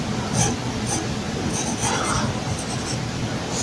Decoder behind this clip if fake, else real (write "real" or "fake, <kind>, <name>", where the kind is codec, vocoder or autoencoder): real